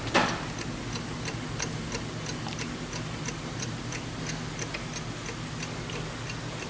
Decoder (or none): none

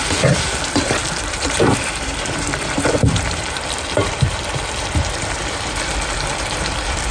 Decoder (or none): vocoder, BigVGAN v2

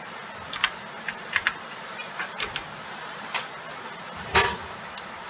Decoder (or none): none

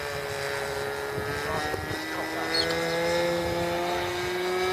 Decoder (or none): none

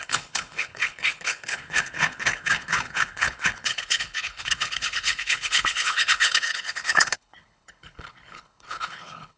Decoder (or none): codec, HILCodec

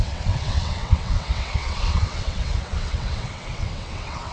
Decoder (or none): vocoder, WaveNeXt